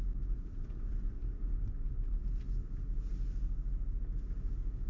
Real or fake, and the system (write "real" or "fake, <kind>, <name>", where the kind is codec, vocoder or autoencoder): real